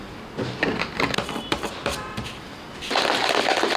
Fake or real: real